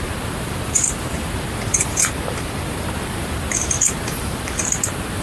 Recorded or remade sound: remade